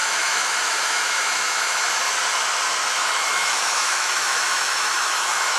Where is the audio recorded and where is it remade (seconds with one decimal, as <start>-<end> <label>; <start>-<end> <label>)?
0.0-2.0 remade; 2.0-2.8 recorded; 2.8-5.6 remade